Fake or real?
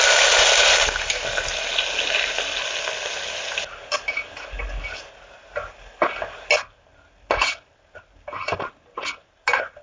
real